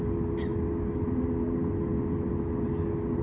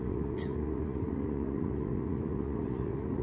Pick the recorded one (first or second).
first